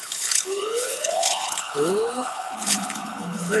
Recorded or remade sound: remade